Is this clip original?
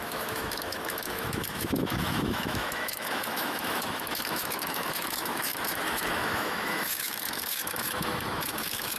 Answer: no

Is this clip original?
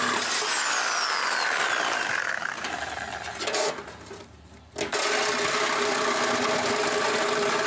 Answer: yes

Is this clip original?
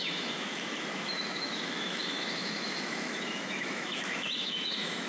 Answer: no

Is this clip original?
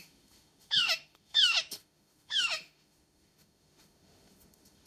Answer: no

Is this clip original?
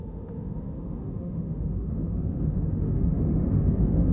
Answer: no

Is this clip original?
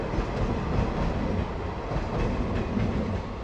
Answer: yes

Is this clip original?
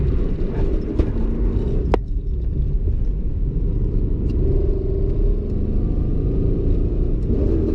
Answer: yes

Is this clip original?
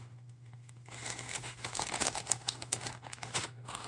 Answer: no